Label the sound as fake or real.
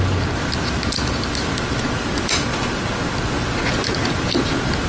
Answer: real